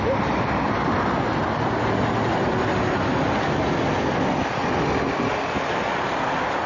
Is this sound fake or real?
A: real